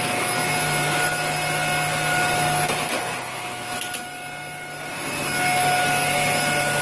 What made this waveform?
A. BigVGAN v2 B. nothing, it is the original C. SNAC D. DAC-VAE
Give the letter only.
B